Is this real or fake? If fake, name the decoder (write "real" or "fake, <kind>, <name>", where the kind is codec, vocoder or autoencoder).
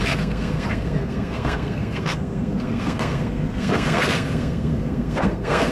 fake, codec, SNAC